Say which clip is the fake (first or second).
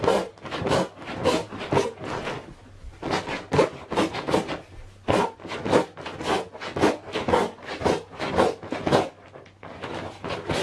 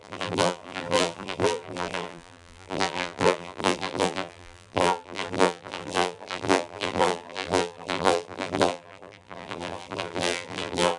second